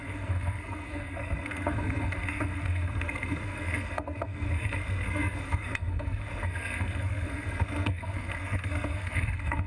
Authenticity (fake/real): fake